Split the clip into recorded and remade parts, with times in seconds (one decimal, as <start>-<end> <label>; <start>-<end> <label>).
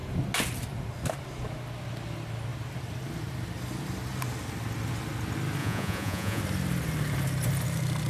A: 0.0-5.6 recorded; 5.6-6.4 remade; 6.4-8.1 recorded